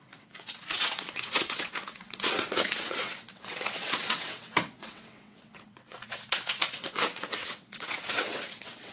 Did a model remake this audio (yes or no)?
yes